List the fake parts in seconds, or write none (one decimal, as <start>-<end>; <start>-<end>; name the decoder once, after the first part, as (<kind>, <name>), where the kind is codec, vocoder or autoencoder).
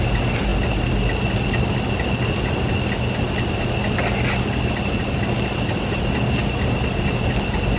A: none